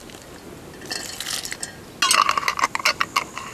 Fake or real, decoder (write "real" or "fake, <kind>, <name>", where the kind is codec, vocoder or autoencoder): real